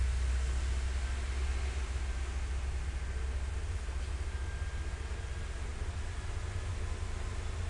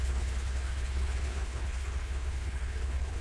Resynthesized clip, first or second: second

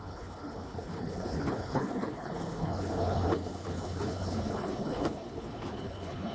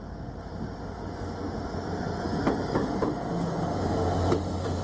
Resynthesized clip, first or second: first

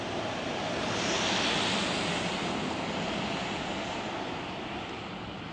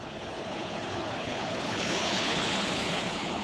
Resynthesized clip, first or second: second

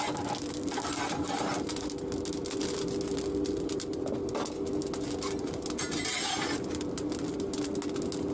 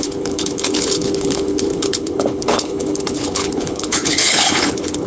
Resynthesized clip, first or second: second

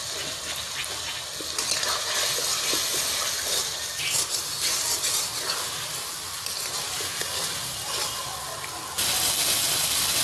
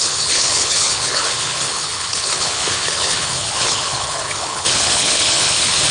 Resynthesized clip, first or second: second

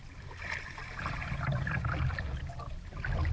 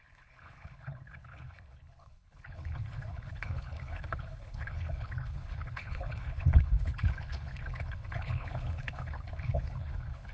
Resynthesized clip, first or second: second